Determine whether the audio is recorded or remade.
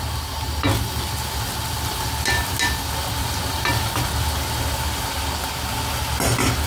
recorded